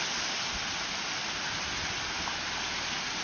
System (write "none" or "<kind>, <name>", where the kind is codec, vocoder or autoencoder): none